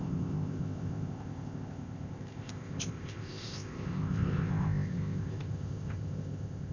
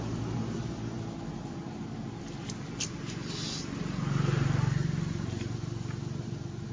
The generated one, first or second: first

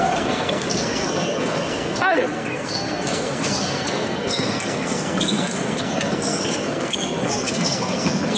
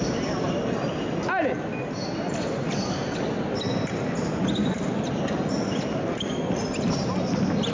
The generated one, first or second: first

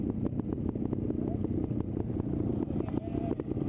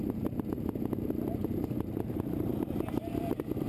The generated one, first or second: second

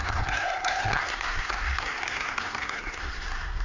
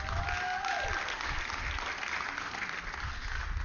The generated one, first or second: first